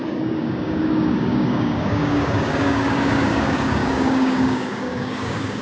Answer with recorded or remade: remade